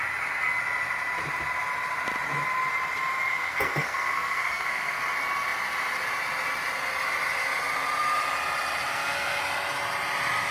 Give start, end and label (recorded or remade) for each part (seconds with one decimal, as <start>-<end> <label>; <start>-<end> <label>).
0.0-3.3 recorded; 3.3-5.0 remade; 5.0-8.9 recorded; 8.9-9.4 remade; 9.4-10.5 recorded